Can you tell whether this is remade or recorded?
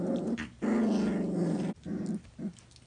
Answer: recorded